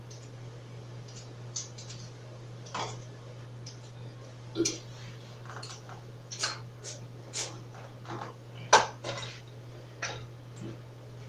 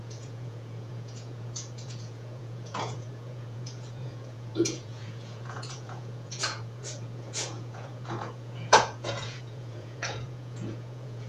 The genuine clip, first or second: first